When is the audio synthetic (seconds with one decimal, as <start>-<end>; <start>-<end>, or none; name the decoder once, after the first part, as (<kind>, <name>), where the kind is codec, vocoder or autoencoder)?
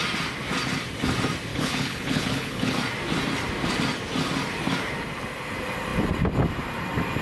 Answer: 1.5-2.8 (codec, HILCodec)